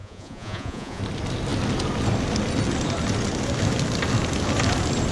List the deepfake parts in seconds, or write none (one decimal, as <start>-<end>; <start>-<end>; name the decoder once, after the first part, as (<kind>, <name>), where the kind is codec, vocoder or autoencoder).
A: 0.0-1.0 (vocoder, Vocos)